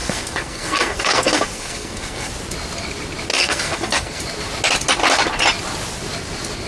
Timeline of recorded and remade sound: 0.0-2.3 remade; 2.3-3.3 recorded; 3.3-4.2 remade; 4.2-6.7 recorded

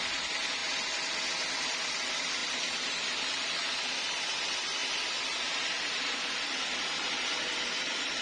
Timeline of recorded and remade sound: 0.0-8.2 recorded

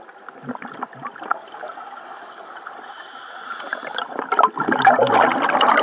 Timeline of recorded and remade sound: 0.0-5.8 recorded

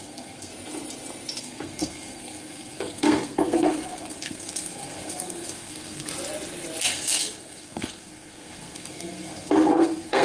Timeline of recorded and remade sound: 0.0-0.5 remade; 0.5-1.4 recorded; 1.4-6.1 remade; 6.1-6.8 recorded; 6.8-10.2 remade

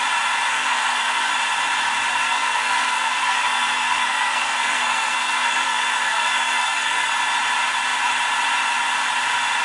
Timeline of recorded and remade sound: 0.0-0.5 recorded; 0.5-1.3 remade; 1.3-2.1 recorded; 2.1-7.1 remade; 7.1-9.6 recorded

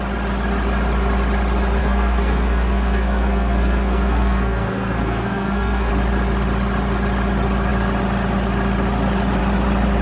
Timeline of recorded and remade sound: 0.0-1.8 recorded; 1.8-5.9 remade; 5.9-10.0 recorded

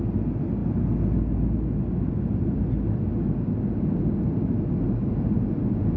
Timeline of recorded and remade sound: 0.0-6.0 recorded

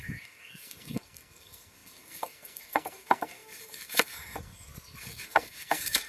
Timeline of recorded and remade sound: 0.0-6.1 remade